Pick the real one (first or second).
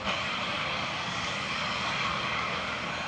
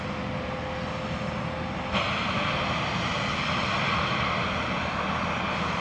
second